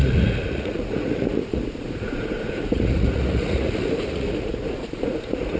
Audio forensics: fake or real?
fake